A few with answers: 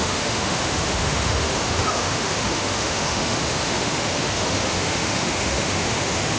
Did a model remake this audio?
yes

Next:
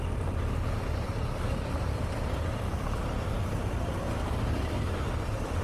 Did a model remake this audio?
yes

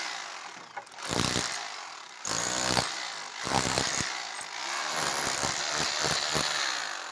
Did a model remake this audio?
no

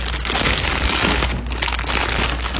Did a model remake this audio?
no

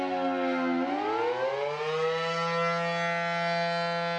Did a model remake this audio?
no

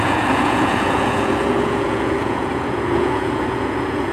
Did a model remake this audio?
yes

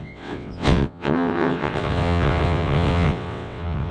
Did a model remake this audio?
yes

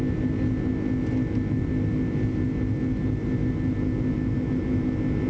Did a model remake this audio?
no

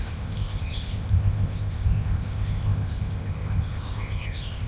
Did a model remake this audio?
yes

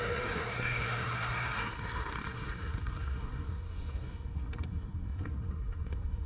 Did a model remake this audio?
yes